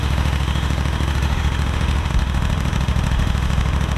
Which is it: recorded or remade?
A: remade